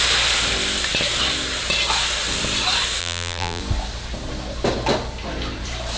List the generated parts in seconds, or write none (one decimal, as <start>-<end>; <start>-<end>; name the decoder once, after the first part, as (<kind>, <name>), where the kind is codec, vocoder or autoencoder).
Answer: 3.0-3.6 (vocoder, BigVGAN v2)